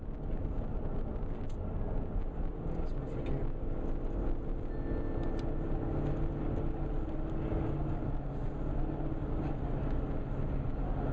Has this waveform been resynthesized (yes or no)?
no